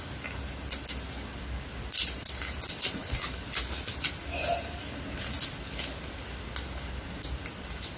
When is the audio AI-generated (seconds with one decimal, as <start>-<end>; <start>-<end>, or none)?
none

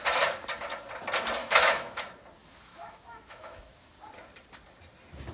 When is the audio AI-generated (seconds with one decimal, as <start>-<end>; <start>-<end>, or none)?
1.4-2.0; 2.4-3.9

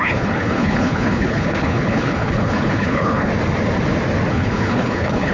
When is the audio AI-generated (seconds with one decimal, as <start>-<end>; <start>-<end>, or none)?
0.0-3.3; 4.3-5.3

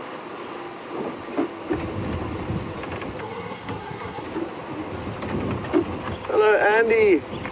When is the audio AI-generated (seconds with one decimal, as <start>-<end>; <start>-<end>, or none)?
3.2-4.2

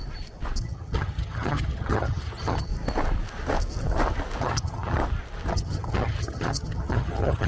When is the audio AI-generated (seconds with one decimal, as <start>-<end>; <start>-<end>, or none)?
0.6-2.7; 4.4-5.0; 5.5-7.5

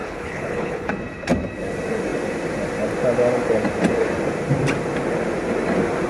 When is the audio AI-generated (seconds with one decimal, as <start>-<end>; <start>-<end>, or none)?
0.0-0.9

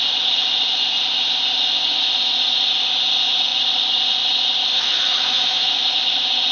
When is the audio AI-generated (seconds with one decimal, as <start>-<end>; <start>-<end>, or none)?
4.7-5.8